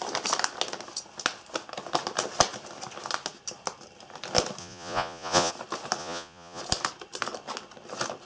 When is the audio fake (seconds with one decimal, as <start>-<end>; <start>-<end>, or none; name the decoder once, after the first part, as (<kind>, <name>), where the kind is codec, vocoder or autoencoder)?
4.6-5.5 (vocoder, Vocos); 6.0-6.6